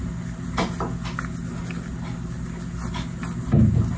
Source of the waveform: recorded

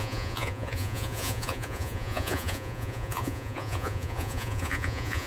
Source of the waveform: remade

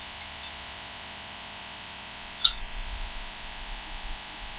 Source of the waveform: recorded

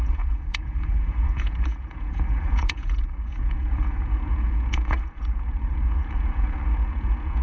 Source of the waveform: remade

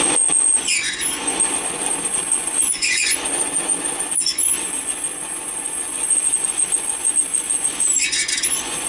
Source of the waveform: remade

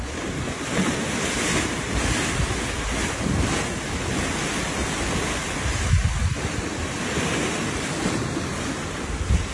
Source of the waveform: recorded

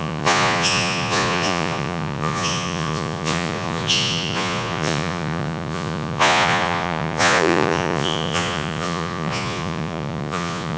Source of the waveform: remade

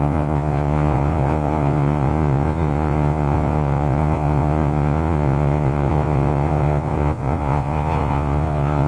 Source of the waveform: remade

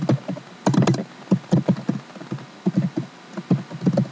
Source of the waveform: recorded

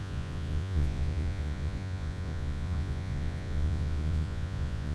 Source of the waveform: remade